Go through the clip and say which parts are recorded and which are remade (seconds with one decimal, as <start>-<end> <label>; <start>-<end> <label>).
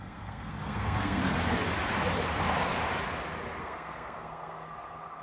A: 0.0-1.2 remade; 1.2-3.6 recorded; 3.6-5.2 remade